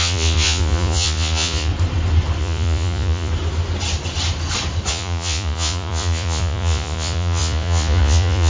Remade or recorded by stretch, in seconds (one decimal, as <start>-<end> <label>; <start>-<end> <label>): 0.0-1.7 remade; 1.7-2.4 recorded; 2.4-3.3 remade; 3.3-4.9 recorded; 4.9-8.5 remade